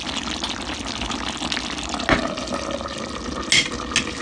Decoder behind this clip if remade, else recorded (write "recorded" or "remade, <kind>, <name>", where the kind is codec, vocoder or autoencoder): recorded